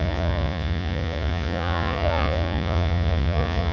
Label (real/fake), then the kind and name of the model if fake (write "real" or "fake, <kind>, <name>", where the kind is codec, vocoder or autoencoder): fake, vocoder, Vocos